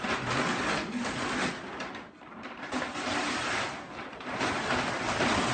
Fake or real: real